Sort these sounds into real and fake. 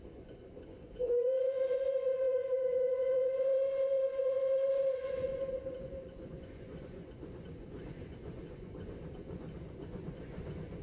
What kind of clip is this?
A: fake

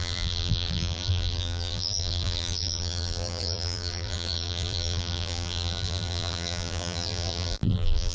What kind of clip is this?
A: fake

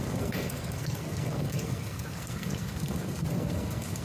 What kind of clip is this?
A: fake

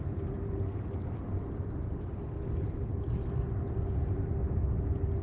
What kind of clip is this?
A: real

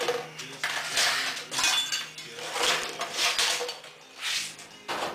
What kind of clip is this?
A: real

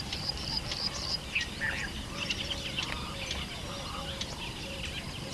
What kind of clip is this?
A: fake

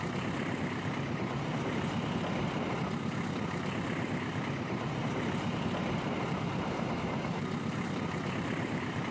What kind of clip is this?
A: fake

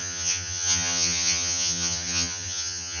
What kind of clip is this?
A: fake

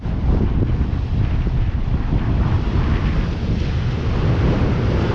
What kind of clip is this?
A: real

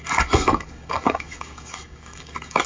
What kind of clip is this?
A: fake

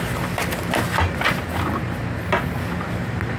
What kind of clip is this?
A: real